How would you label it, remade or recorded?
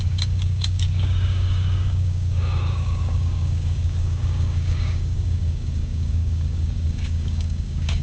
remade